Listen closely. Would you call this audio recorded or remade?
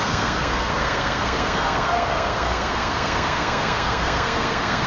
remade